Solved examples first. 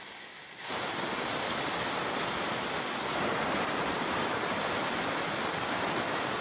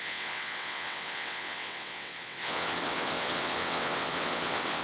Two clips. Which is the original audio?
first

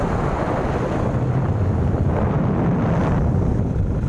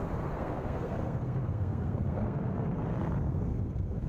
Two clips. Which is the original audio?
first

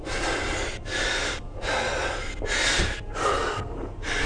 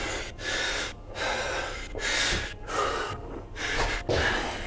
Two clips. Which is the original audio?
second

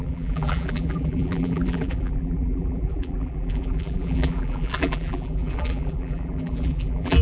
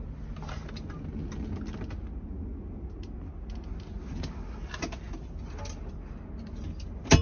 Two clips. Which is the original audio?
second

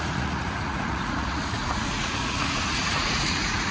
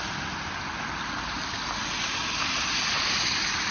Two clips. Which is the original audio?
second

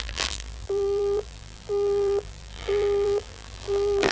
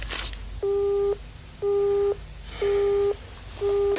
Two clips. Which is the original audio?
second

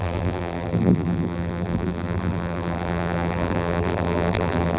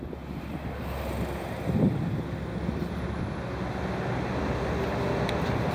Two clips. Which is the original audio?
second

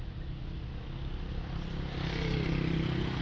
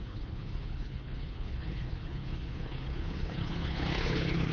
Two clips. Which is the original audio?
first